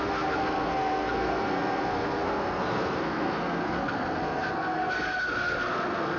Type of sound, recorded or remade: remade